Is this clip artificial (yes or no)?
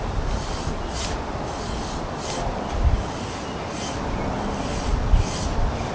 no